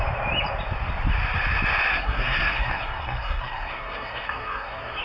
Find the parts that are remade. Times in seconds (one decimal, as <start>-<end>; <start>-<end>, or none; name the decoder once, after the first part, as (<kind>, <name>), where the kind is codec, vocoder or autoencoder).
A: 1.9-5.0 (codec, SNAC)